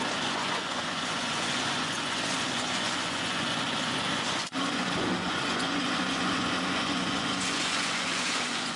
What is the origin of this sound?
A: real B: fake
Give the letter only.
B